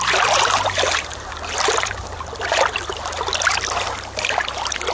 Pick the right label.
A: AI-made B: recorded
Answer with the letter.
B